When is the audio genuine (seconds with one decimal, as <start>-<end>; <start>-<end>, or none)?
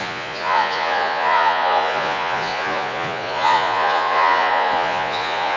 none